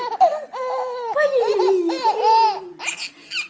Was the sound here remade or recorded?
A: recorded